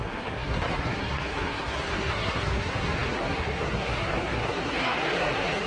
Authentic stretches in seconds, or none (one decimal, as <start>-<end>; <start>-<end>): none